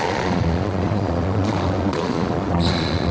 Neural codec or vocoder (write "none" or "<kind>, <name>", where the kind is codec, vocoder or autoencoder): vocoder, Vocos